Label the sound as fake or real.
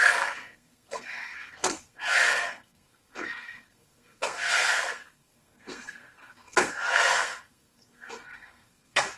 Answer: fake